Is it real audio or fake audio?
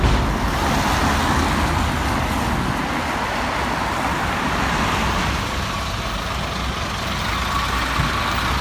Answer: real